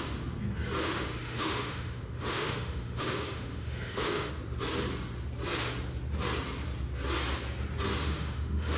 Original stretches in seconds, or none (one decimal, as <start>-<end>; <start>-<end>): 0.0-0.8; 4.3-8.0